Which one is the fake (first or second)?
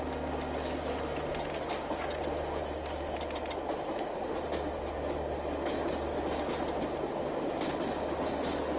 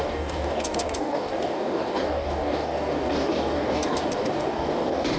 second